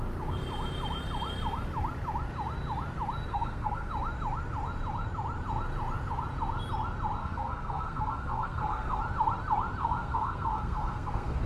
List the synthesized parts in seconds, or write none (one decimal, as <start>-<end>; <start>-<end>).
3.3-3.9; 7.2-9.0; 9.8-11.5